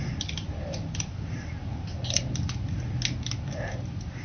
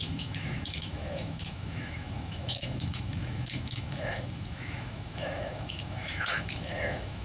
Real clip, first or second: first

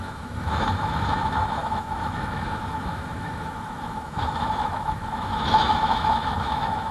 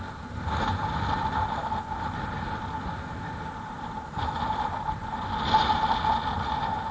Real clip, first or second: second